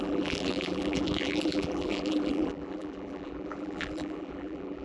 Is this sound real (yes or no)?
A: no